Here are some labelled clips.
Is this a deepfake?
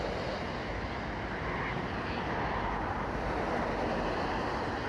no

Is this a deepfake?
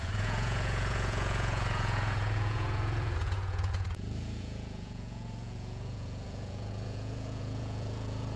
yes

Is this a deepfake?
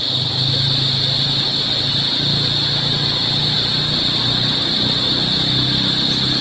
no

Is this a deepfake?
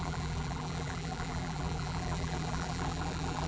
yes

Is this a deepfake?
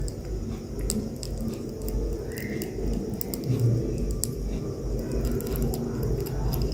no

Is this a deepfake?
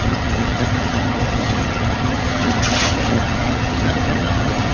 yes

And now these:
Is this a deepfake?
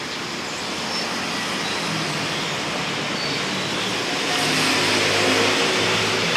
no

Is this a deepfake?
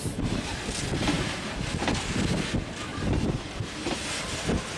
no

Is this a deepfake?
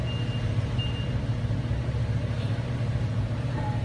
no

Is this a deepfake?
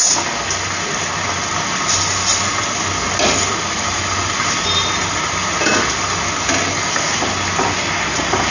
no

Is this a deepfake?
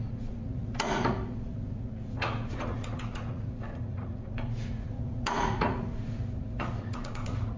yes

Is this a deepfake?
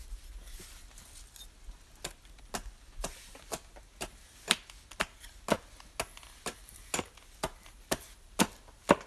no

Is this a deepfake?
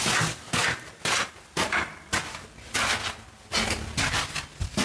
no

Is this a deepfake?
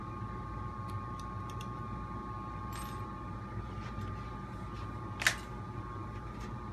no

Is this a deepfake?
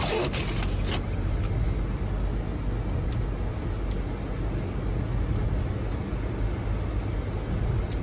no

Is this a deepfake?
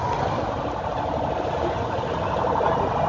no